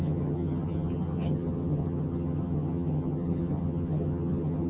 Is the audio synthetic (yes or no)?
yes